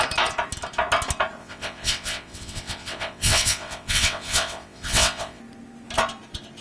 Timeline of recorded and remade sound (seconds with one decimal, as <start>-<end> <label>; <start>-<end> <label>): 0.0-1.4 recorded; 1.4-5.4 remade; 5.4-6.6 recorded